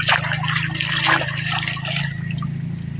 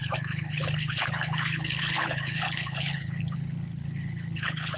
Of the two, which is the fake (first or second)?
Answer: second